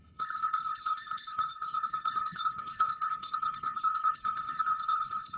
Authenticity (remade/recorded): remade